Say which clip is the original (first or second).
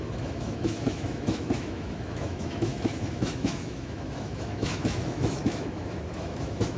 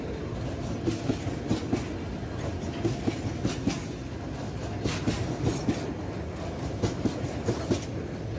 second